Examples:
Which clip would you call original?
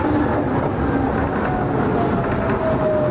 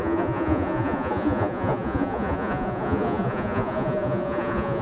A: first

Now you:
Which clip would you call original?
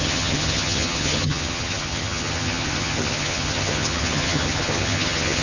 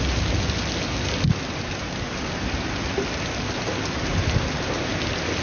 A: second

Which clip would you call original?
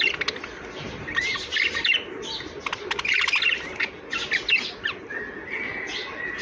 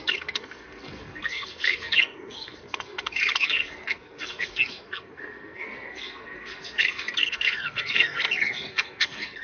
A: first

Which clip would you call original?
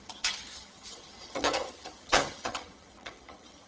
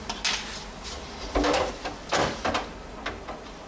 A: second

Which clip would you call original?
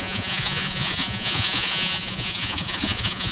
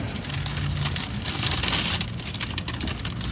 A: second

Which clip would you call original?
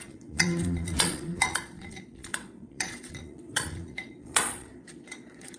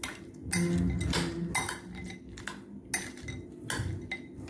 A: second